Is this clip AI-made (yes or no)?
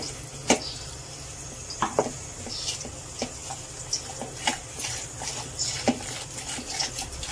no